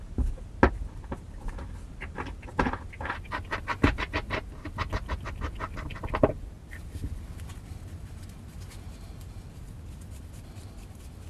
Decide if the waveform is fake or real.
real